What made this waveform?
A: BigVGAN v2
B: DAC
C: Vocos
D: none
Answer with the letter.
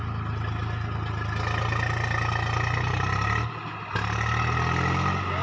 D